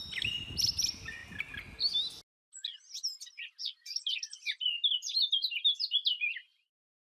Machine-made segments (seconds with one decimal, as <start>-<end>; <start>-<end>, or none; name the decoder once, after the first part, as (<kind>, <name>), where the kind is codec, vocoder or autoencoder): none